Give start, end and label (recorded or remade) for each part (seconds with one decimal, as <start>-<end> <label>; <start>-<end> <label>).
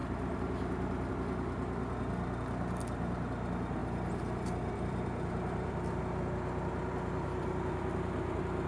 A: 0.0-1.1 remade; 1.1-3.8 recorded; 3.8-6.0 remade; 6.0-8.7 recorded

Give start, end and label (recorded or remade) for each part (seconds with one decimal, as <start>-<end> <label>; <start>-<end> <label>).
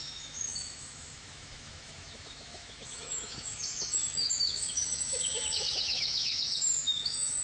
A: 0.0-7.4 remade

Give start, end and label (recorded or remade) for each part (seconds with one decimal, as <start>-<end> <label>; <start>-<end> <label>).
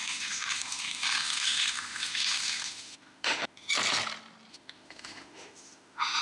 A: 0.0-3.7 remade; 3.7-4.5 recorded; 4.5-6.2 remade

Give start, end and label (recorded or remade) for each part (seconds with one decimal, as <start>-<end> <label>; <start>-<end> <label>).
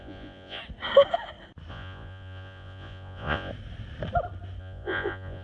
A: 0.0-0.6 remade; 0.6-1.7 recorded; 1.7-3.5 remade; 3.5-4.6 recorded; 4.6-5.4 remade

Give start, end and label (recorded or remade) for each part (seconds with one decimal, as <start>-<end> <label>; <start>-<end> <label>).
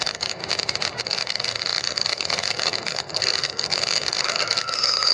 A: 0.0-0.4 remade; 0.4-1.0 recorded; 1.0-5.1 remade